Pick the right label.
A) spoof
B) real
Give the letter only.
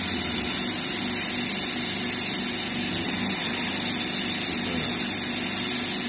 B